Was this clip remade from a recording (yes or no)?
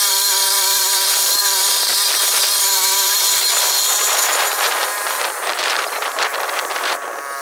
yes